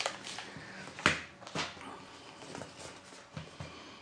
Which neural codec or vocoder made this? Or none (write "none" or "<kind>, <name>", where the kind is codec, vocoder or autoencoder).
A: none